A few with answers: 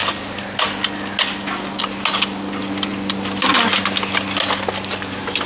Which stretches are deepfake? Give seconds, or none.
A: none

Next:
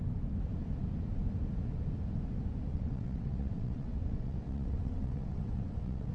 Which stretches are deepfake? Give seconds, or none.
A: 2.7-6.1 (vocoder, WaveNeXt)

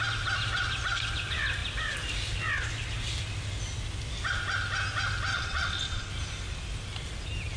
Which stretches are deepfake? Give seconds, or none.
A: 5.3-6.1 (vocoder, WaveNeXt)

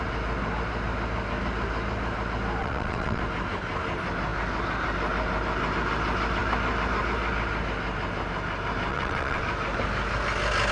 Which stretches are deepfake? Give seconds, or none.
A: 2.6-3.2 (vocoder, WaveNeXt); 8.9-9.4